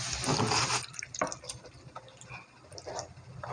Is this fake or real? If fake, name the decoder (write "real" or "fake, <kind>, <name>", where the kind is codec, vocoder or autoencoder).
real